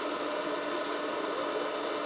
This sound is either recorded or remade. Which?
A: recorded